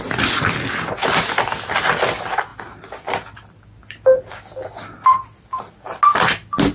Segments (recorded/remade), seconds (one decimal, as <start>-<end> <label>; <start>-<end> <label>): 0.0-6.7 recorded